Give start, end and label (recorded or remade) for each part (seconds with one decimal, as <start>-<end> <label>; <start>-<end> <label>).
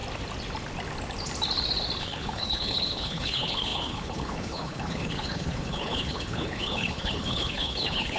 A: 0.0-2.0 recorded; 2.0-8.2 remade